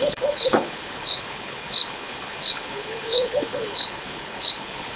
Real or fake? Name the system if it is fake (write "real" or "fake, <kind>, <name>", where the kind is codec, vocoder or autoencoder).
fake, codec, HILCodec